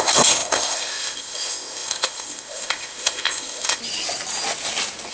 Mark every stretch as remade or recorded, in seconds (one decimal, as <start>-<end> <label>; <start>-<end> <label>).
0.0-3.8 remade; 3.8-5.1 recorded